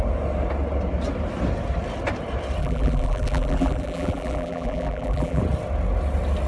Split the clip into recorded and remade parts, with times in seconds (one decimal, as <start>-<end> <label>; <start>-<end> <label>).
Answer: 0.0-2.6 recorded; 2.6-5.4 remade; 5.4-6.5 recorded